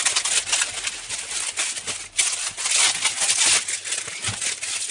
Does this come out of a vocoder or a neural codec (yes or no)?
no